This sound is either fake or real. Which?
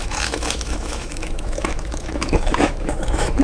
fake